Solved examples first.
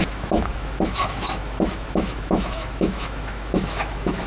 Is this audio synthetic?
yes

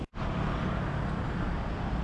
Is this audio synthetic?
no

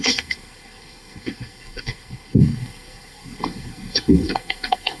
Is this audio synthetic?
yes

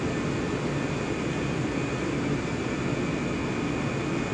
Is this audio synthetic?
no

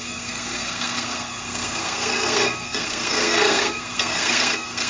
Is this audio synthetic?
yes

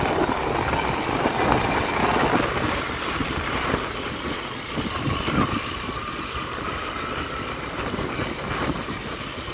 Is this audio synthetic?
no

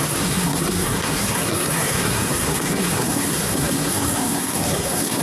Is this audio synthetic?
yes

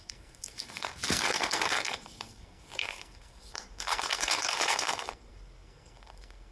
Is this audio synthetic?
yes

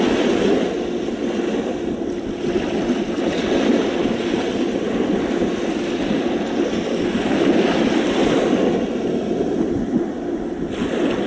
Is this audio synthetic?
no